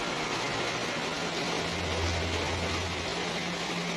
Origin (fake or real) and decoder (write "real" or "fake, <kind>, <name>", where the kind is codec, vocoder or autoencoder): real